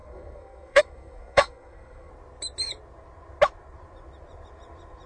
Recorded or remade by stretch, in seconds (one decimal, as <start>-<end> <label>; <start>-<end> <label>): 0.0-2.1 remade; 2.1-5.1 recorded